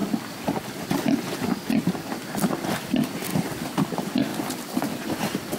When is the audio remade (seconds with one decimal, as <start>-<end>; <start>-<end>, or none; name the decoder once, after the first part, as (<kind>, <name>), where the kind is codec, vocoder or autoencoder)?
none